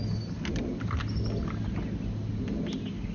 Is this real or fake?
real